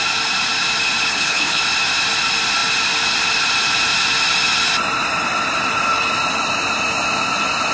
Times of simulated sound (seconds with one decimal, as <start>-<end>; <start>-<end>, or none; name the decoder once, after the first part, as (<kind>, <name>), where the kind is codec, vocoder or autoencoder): 1.1-1.6 (codec, HILCodec)